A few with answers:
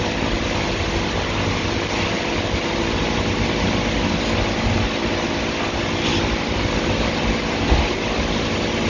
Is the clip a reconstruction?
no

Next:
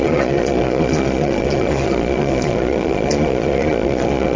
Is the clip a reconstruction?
yes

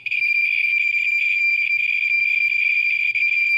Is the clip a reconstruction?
yes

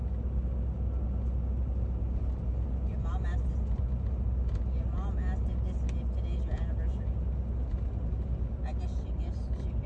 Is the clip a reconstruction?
no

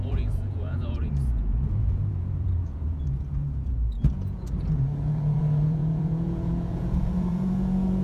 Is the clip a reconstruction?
yes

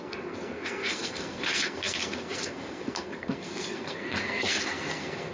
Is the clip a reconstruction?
yes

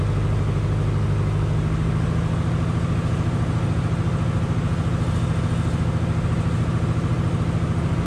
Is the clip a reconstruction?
no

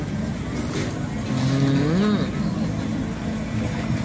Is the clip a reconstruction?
no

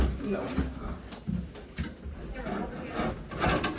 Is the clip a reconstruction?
no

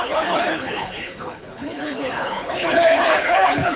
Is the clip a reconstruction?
yes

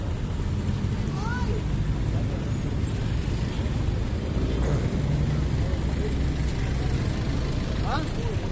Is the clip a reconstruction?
no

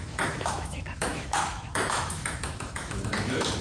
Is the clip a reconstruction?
yes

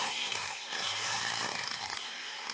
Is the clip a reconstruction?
yes